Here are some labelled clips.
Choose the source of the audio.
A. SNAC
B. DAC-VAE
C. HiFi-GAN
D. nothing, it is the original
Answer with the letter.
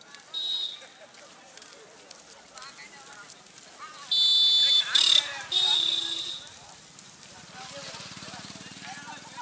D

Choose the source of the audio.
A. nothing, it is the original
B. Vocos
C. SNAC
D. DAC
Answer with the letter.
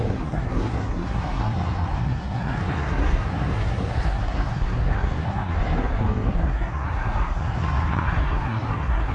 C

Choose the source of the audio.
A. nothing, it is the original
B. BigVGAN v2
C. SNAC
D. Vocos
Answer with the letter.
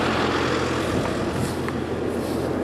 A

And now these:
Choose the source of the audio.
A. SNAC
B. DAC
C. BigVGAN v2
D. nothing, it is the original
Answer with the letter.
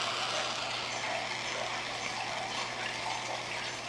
D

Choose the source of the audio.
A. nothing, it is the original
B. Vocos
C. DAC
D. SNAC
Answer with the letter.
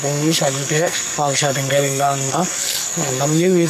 D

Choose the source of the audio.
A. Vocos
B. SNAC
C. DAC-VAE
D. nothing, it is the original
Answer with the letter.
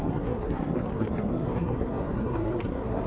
B